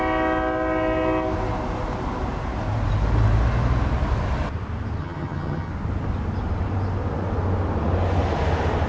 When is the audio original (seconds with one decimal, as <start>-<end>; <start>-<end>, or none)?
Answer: 0.0-5.0; 5.7-8.9